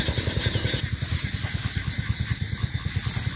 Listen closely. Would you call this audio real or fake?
real